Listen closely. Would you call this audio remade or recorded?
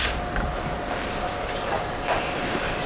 recorded